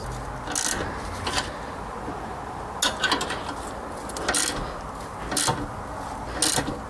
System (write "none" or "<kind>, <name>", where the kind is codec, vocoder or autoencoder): none